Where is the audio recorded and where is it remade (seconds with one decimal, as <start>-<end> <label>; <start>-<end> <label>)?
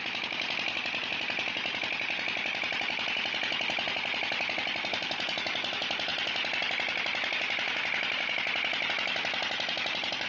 0.0-10.3 recorded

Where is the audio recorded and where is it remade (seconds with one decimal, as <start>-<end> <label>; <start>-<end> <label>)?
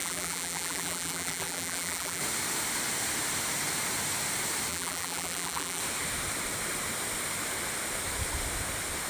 0.0-2.2 remade; 2.2-4.7 recorded; 4.7-5.8 remade; 5.8-9.1 recorded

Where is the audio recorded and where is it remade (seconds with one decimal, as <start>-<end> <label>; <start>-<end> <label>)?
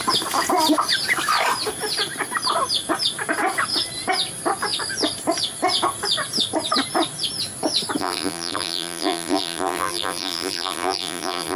0.0-8.0 recorded; 8.0-11.6 remade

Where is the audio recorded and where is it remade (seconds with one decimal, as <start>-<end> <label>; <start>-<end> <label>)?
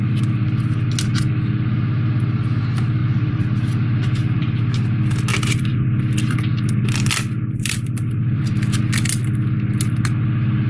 0.0-3.0 recorded; 3.0-4.6 remade; 4.6-5.3 recorded; 5.3-8.8 remade; 8.8-10.7 recorded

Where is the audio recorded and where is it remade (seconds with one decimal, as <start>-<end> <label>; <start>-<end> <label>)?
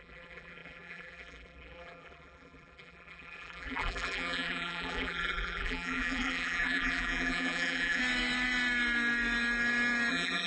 0.0-8.0 remade; 8.0-10.1 recorded; 10.1-10.5 remade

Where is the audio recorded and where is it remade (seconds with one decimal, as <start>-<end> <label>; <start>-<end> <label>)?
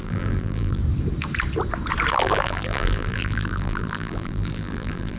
0.0-0.8 remade; 0.8-2.1 recorded; 2.1-5.2 remade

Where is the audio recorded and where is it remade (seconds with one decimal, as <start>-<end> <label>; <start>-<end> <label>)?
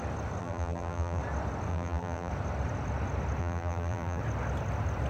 0.0-0.4 recorded; 0.4-1.2 remade; 1.2-1.7 recorded; 1.7-2.3 remade; 2.3-3.4 recorded; 3.4-4.2 remade; 4.2-5.1 recorded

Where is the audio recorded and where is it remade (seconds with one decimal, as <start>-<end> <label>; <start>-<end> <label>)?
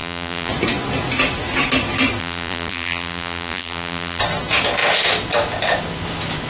0.0-0.5 remade; 0.5-2.2 recorded; 2.2-4.2 remade; 4.2-6.5 recorded